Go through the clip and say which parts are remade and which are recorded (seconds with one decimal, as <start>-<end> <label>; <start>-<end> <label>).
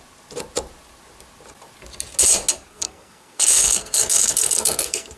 0.0-2.7 recorded; 2.7-5.2 remade